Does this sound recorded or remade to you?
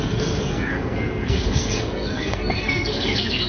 remade